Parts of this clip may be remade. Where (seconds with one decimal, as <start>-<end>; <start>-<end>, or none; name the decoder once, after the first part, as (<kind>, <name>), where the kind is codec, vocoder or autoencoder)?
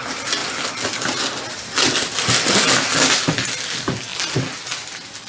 none